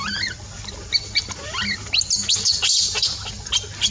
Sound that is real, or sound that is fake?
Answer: real